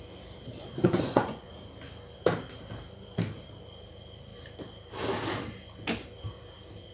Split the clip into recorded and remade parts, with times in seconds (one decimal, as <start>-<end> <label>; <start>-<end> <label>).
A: 0.0-0.8 recorded; 0.8-1.5 remade; 1.5-6.9 recorded